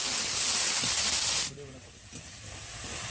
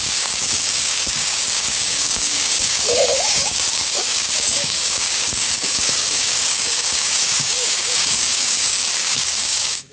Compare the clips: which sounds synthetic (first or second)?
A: second